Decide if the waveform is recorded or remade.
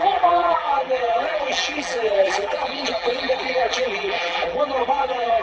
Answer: remade